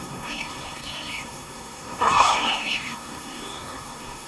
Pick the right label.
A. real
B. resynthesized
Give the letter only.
B